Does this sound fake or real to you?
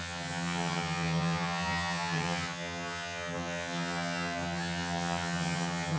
fake